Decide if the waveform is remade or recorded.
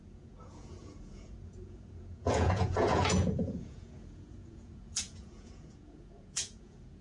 remade